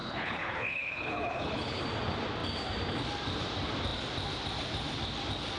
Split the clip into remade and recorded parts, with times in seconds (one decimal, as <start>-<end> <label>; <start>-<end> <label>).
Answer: 0.0-1.8 remade; 1.8-5.6 recorded